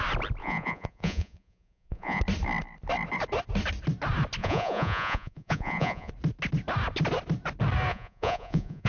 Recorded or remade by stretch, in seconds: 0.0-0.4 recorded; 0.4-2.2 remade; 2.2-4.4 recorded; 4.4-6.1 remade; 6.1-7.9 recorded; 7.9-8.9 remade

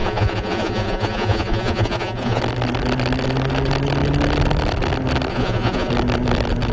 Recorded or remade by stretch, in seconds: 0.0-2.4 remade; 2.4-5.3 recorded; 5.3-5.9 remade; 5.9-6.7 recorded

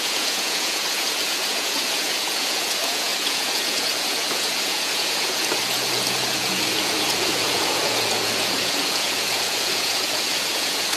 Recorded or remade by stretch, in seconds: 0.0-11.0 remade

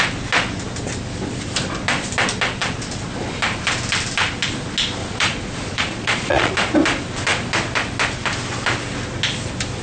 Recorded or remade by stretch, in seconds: 0.0-5.0 recorded; 5.0-6.5 remade; 6.5-9.8 recorded

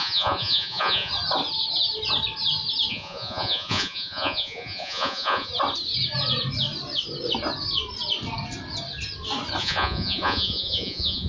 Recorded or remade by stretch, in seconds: 0.0-1.1 remade; 1.1-2.9 recorded; 2.9-5.5 remade; 5.5-9.6 recorded; 9.6-11.3 remade